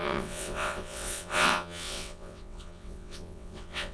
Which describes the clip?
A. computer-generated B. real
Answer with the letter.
A